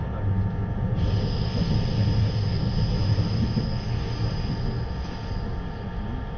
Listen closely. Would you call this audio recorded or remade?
recorded